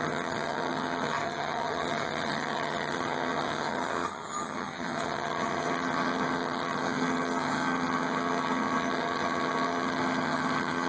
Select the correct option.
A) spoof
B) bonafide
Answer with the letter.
A